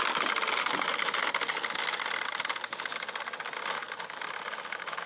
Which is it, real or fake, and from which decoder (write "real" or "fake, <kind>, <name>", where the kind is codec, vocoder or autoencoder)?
real